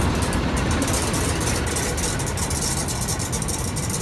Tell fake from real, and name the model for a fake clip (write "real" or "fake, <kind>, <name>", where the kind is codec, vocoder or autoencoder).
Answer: real